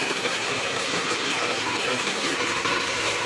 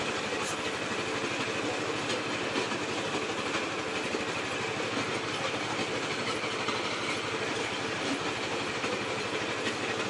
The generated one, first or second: first